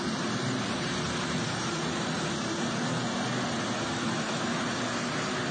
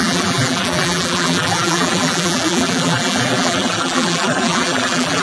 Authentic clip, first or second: first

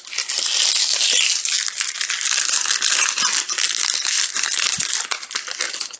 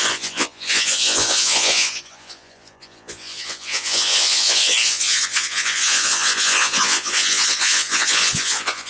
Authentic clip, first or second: first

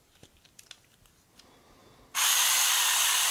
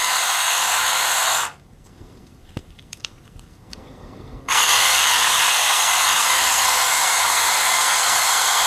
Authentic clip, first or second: first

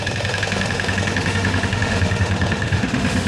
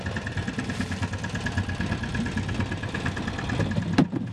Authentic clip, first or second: second